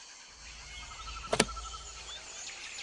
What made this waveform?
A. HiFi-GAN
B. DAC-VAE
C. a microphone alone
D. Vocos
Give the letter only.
C